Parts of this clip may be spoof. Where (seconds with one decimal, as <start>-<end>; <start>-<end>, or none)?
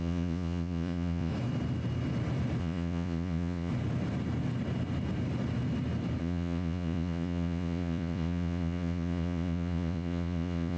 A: 0.0-1.3; 2.6-3.7; 6.2-10.8